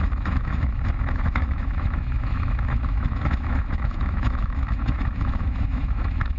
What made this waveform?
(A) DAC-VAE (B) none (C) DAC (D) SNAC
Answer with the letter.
A